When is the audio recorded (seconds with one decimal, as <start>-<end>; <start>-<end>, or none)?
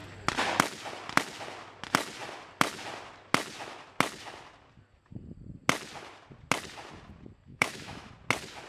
0.0-7.5; 8.1-8.7